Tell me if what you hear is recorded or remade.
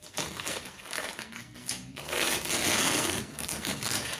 remade